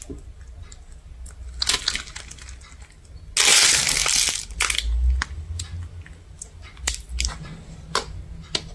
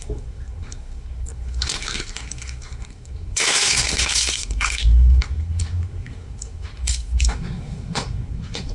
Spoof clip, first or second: second